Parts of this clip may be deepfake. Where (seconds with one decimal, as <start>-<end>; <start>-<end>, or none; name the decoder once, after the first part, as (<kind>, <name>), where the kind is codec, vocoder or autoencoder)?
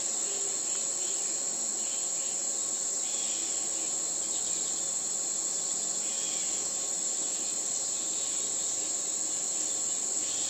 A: 1.7-2.4 (vocoder, BigVGAN v2)